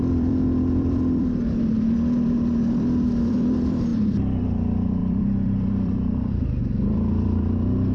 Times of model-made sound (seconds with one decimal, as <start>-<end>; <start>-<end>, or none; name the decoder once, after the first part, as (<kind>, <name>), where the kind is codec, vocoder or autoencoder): 0.0-7.9 (vocoder, BigVGAN v2)